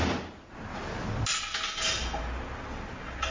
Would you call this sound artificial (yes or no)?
no